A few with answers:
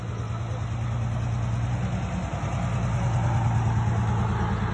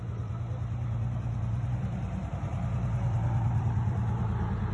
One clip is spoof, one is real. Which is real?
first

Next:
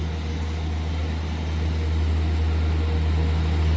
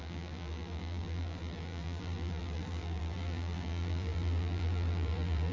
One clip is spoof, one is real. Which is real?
first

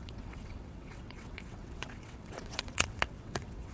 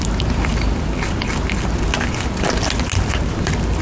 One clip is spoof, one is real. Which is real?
second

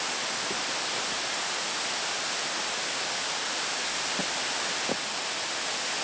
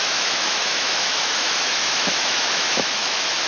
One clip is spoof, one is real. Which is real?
first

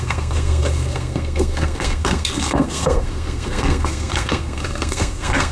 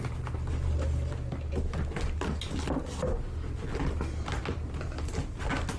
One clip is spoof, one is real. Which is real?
second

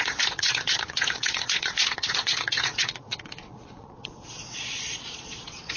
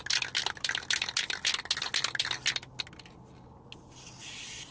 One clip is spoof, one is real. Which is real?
second